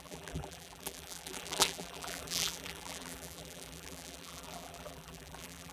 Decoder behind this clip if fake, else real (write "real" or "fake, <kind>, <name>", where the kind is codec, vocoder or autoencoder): fake, vocoder, BigVGAN v2